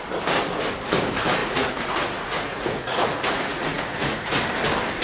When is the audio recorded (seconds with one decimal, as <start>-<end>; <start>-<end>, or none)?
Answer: 0.0-1.4; 4.4-5.0